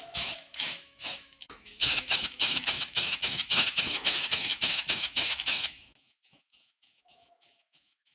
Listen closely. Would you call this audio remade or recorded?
remade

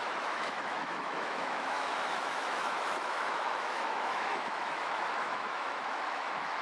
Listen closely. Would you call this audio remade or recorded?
remade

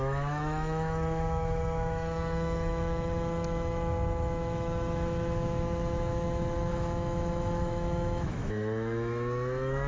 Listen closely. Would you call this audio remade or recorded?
remade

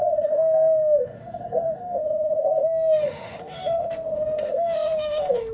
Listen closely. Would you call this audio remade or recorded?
remade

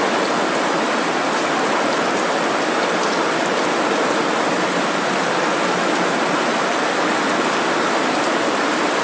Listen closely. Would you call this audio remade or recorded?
recorded